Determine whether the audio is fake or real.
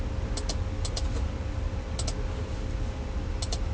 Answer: real